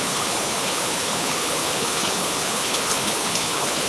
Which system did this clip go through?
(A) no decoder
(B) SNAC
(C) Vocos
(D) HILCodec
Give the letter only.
D